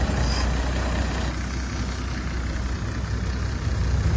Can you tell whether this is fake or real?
real